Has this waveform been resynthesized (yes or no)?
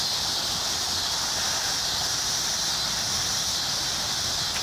yes